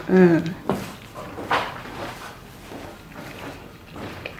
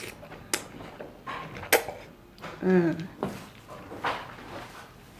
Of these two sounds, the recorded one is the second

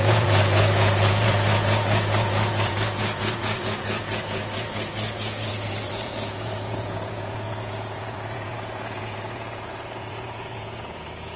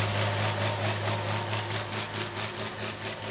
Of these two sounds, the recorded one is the second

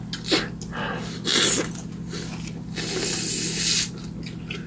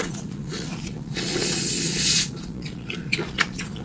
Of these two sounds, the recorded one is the first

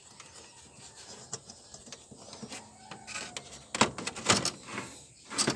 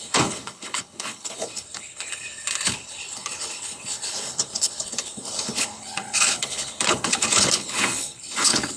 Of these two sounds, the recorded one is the first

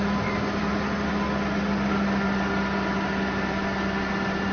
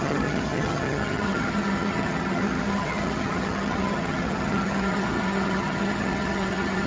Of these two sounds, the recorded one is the first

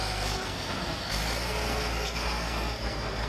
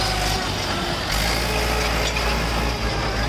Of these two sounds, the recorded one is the second